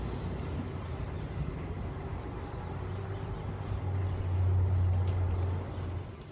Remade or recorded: recorded